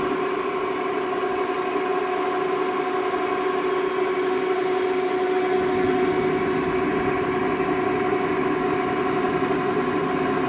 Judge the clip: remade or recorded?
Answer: recorded